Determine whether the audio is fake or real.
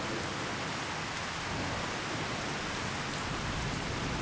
real